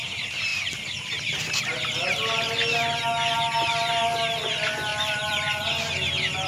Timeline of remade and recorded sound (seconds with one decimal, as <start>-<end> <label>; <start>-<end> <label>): 0.0-0.5 recorded; 0.5-1.6 remade; 1.6-4.9 recorded; 4.9-6.5 remade